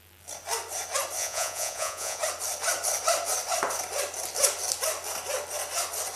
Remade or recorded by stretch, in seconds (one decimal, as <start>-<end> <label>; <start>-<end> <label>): 0.0-1.2 recorded; 1.2-2.2 remade; 2.2-6.2 recorded